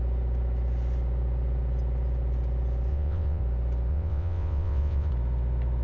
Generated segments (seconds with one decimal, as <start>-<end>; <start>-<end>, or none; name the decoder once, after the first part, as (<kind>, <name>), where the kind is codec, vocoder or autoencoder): 2.9-3.4 (vocoder, WaveNeXt); 3.9-5.1